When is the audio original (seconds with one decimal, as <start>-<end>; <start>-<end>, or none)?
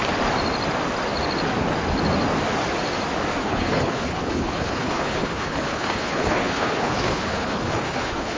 0.0-3.4